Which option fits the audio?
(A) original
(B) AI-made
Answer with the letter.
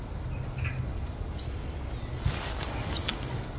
A